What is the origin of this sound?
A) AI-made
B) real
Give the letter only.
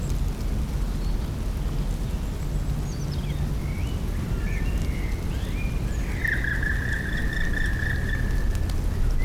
B